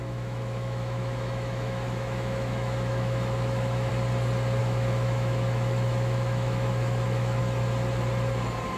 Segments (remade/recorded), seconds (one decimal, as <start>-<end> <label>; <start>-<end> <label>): 0.0-3.9 remade; 3.9-4.6 recorded; 4.6-7.4 remade; 7.4-8.8 recorded